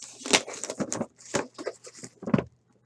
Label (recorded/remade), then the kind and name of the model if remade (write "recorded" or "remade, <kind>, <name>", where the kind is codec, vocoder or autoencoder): recorded